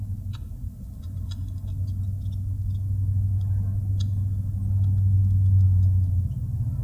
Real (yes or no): yes